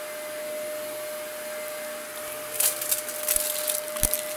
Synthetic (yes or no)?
no